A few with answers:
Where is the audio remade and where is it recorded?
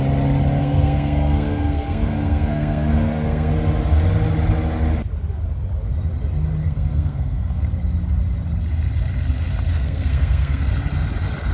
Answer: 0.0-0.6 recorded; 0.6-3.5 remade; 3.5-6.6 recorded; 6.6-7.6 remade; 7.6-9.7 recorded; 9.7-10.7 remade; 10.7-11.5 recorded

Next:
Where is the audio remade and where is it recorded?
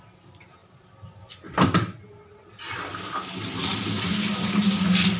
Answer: 0.0-5.2 recorded